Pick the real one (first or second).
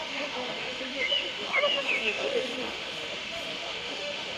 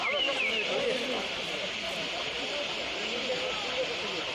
second